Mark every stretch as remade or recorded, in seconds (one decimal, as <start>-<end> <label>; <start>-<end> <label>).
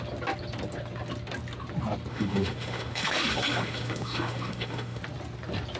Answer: 0.0-2.1 recorded; 2.1-5.0 remade; 5.0-5.8 recorded